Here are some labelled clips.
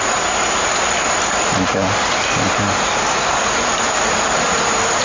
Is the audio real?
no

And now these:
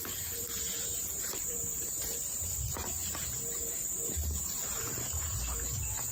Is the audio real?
no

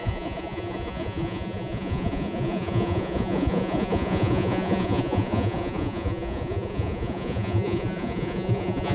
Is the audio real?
no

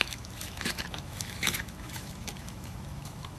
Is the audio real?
no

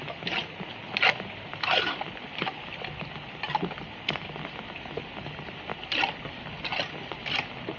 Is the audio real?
yes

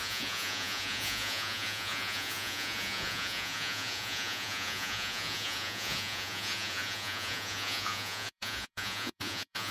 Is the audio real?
no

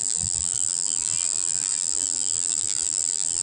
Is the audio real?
no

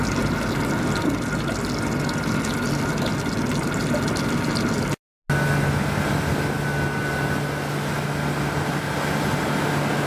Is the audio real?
yes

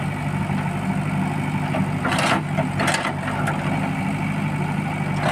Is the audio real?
yes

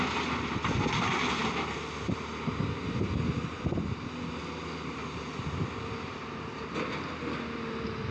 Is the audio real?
yes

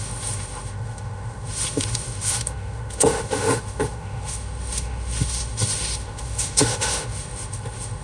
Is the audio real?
no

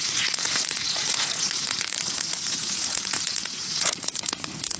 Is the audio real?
no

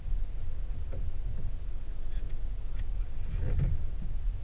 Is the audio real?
yes